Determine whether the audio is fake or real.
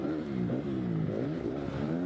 fake